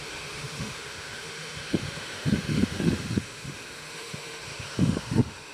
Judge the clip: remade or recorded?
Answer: remade